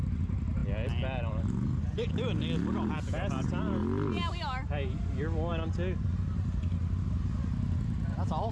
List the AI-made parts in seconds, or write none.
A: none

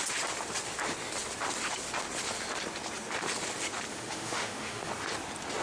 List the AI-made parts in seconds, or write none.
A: 3.9-4.9 (autoencoder, DAC-VAE)

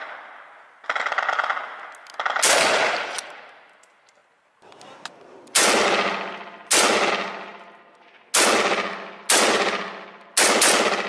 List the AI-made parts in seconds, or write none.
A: none

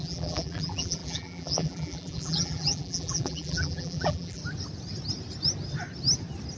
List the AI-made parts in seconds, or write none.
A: 0.0-4.4 (vocoder, BigVGAN v2)